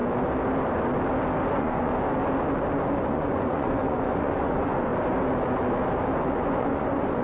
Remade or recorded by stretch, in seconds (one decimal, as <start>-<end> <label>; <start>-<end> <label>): 0.0-1.5 recorded; 1.5-1.9 remade; 1.9-3.0 recorded; 3.0-4.9 remade; 4.9-6.3 recorded; 6.3-7.2 remade